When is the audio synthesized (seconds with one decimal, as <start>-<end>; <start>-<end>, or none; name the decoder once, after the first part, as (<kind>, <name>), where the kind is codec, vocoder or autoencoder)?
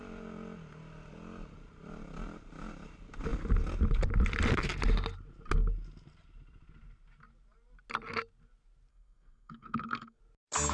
8.9-10.2 (codec, SNAC)